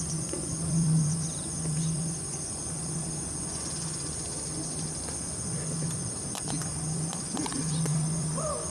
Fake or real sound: fake